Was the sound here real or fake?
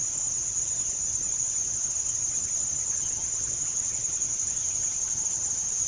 fake